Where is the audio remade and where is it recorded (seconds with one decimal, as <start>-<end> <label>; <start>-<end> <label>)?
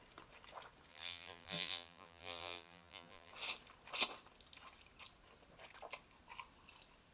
0.0-0.9 recorded; 0.9-3.3 remade; 3.3-7.1 recorded